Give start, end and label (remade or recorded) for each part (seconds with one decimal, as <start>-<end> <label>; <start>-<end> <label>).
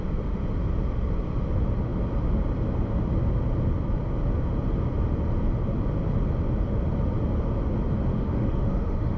0.0-8.1 recorded; 8.1-9.2 remade